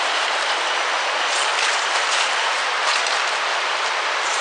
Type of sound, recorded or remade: remade